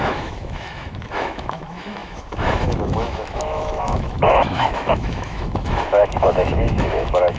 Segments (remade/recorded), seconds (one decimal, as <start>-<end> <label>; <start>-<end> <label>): 0.0-7.4 remade